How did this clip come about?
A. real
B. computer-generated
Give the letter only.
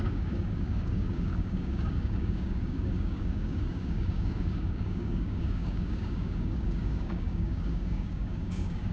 B